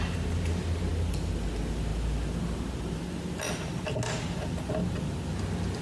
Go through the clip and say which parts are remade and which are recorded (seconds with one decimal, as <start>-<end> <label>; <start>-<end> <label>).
0.0-5.8 recorded